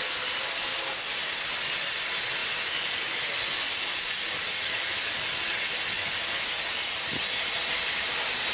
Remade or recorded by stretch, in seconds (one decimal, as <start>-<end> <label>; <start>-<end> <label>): 0.0-8.5 recorded